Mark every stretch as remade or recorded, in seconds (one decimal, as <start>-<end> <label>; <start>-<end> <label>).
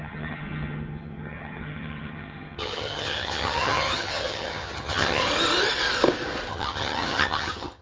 0.0-5.2 remade; 5.2-6.5 recorded; 6.5-7.8 remade